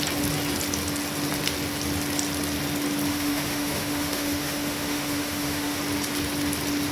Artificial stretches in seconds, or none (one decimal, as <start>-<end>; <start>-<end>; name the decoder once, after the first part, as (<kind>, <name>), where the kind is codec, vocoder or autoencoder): 3.1-5.8 (autoencoder, DAC-VAE)